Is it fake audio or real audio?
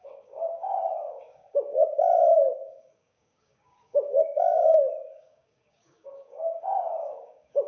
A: fake